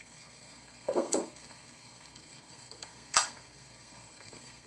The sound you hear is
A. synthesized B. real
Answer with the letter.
A